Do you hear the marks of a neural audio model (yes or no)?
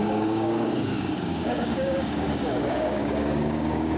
yes